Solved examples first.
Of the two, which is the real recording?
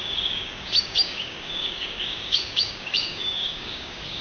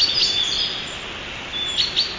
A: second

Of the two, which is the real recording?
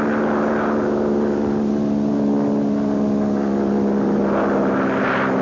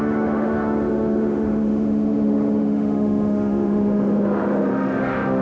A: first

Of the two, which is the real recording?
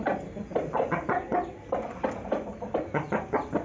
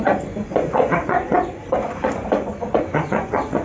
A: first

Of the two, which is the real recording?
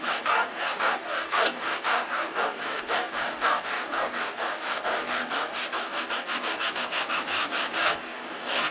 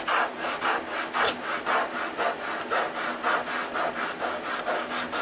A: second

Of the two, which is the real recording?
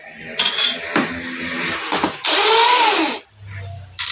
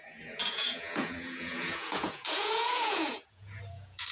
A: first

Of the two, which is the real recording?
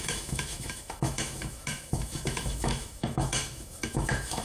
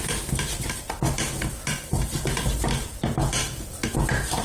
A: second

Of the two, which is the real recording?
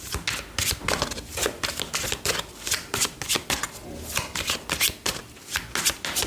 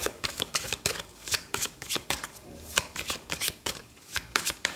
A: first